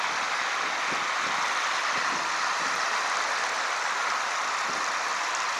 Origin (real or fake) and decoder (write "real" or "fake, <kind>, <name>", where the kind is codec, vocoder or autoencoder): real